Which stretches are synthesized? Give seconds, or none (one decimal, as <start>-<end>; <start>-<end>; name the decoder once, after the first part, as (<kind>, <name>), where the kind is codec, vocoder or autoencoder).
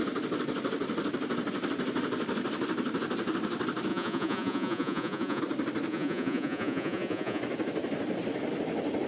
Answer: 3.9-5.4 (vocoder, Vocos); 5.9-7.4